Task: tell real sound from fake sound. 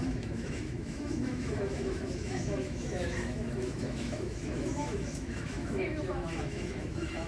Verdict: fake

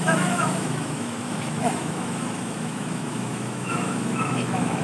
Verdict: fake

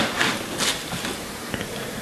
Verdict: real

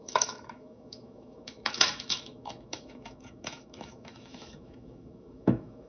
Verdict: fake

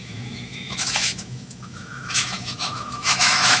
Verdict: fake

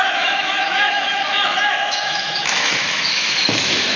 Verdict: fake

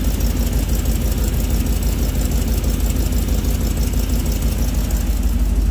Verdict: real